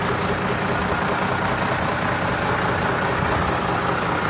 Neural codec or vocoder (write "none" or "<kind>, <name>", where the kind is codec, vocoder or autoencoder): none